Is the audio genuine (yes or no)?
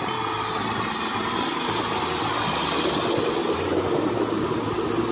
yes